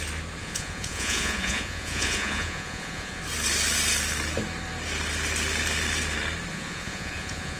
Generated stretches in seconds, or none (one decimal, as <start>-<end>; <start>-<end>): 0.4-3.2; 6.5-7.6